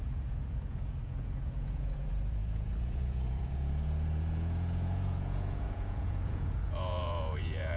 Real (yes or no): no